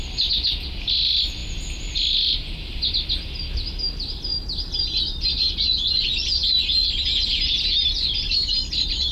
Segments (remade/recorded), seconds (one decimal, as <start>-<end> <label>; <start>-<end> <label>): 0.0-9.1 recorded